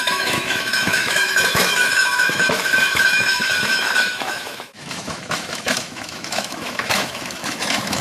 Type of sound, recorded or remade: remade